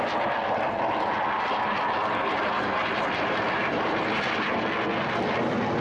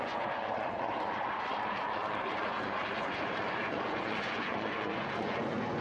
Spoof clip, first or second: second